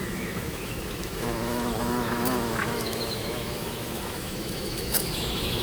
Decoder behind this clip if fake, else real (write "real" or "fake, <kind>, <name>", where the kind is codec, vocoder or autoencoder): fake, autoencoder, DAC-VAE